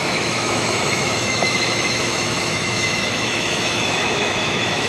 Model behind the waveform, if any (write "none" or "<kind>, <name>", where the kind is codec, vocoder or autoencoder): autoencoder, DAC-VAE